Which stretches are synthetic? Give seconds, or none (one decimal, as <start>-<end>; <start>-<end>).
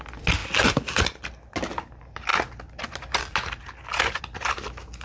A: none